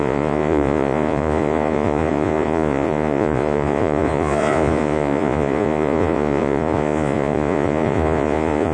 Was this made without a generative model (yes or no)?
no